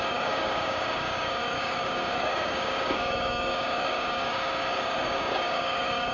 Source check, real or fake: fake